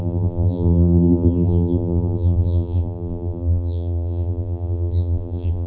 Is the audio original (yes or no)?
no